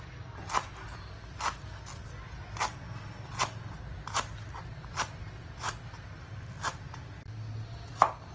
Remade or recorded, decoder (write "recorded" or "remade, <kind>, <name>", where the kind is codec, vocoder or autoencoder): recorded